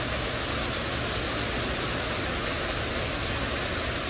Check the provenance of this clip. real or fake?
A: real